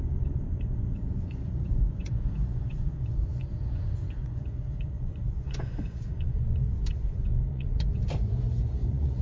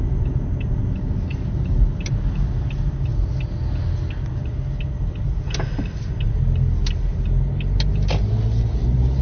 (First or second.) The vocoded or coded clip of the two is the first